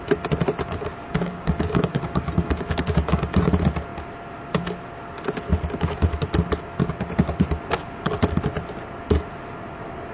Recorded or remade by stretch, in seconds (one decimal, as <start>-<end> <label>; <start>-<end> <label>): 0.0-1.0 recorded; 1.0-3.4 remade; 3.4-10.1 recorded

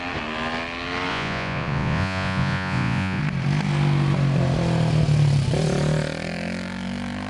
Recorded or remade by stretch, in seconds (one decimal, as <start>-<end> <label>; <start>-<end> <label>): 0.0-1.1 recorded; 1.1-3.2 remade; 3.2-7.3 recorded

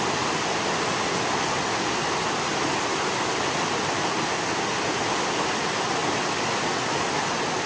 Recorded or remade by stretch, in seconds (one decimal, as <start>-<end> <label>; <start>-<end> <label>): 0.0-7.7 recorded

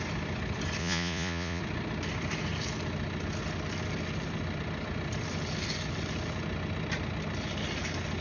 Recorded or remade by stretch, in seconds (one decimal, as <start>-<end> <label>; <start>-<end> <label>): 0.0-0.8 recorded; 0.8-1.6 remade; 1.6-8.2 recorded

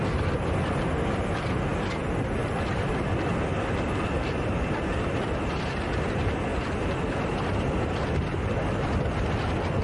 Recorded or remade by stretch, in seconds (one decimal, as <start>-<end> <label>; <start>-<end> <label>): 0.0-2.0 recorded; 2.0-2.9 remade; 2.9-6.5 recorded; 6.5-9.0 remade; 9.0-9.8 recorded